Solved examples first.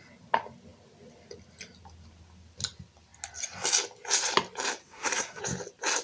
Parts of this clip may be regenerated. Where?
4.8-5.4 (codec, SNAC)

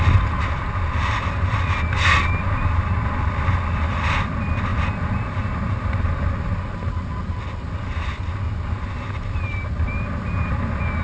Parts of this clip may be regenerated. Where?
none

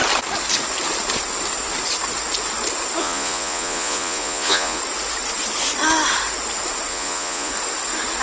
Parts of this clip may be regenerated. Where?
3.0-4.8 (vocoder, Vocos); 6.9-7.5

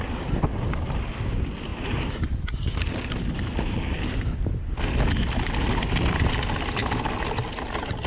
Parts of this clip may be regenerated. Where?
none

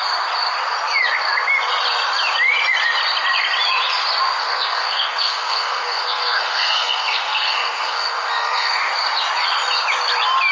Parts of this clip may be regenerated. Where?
4.4-8.8 (codec, SNAC)